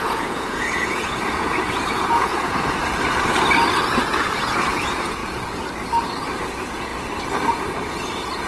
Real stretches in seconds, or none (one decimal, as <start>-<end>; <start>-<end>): 2.8-4.0; 5.2-6.4; 6.9-7.5